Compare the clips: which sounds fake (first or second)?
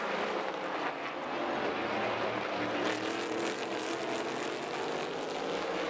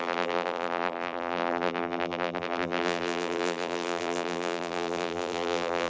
second